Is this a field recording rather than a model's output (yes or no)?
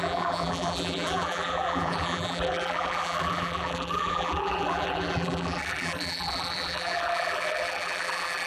no